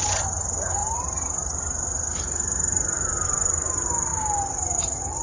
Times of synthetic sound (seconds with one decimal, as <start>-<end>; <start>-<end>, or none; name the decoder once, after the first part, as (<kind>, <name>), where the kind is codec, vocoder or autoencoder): none